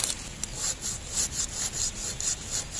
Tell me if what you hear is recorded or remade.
recorded